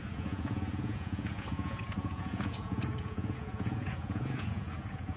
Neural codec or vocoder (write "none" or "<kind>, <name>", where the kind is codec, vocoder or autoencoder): vocoder, Vocos